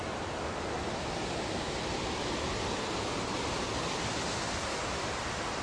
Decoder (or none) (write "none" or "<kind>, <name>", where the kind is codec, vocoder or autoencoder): none